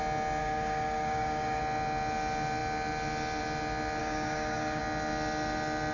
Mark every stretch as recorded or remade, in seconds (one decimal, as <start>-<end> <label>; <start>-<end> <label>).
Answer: 0.0-0.4 recorded; 0.4-1.6 remade; 1.6-4.0 recorded; 4.0-4.8 remade; 4.8-5.9 recorded

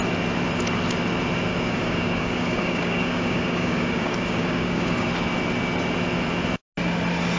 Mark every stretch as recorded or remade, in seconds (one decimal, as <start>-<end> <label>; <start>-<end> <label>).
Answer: 0.0-1.5 recorded; 1.5-5.1 remade; 5.1-7.4 recorded

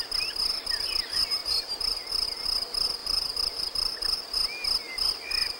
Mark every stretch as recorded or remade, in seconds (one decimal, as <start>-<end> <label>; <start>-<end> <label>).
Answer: 0.0-1.4 recorded; 1.4-2.0 remade; 2.0-3.0 recorded; 3.0-4.0 remade; 4.0-5.6 recorded

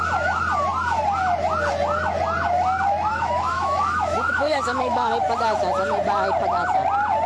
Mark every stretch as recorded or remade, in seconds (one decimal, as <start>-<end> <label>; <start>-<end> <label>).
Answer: 0.0-3.1 recorded; 3.1-5.1 remade; 5.1-7.3 recorded

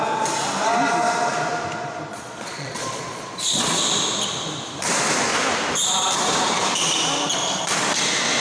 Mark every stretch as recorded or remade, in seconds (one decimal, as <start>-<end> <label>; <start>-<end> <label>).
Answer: 0.0-2.1 recorded; 2.1-3.8 remade; 3.8-8.4 recorded

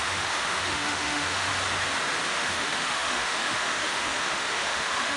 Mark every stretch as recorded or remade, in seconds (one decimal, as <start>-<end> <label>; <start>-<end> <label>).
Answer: 0.0-1.5 remade; 1.5-2.3 recorded; 2.3-5.2 remade

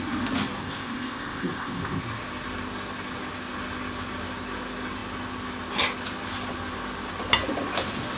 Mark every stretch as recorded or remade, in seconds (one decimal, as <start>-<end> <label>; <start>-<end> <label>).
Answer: 0.0-0.6 recorded; 0.6-2.0 remade; 2.0-8.2 recorded

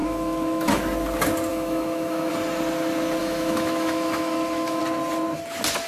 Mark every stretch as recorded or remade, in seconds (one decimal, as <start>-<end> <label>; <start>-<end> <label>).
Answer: 0.0-0.8 remade; 0.8-1.5 recorded; 1.5-2.3 remade; 2.3-3.2 recorded; 3.2-4.8 remade; 4.8-5.9 recorded